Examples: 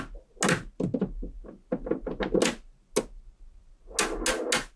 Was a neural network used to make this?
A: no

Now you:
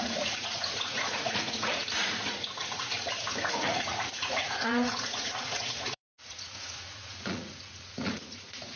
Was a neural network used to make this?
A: yes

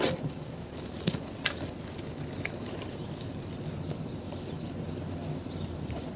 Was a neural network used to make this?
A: yes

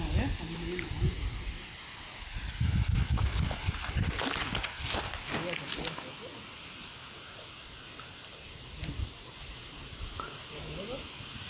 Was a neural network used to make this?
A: no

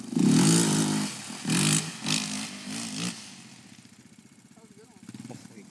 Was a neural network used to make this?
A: no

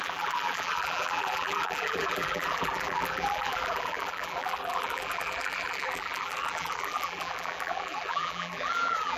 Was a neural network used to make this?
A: yes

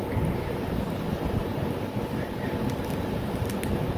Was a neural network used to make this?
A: no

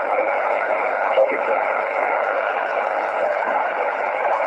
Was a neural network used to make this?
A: yes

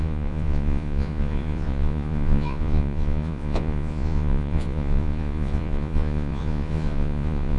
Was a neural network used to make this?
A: yes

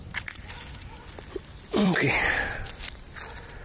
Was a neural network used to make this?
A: yes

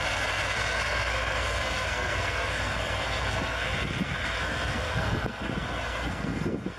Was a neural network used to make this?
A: yes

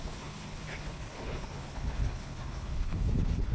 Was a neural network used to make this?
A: yes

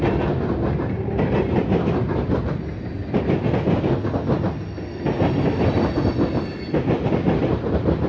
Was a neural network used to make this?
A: no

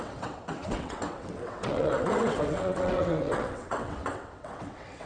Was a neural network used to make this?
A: yes